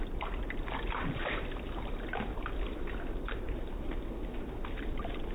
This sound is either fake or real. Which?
fake